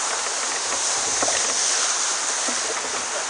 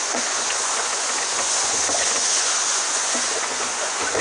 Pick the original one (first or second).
first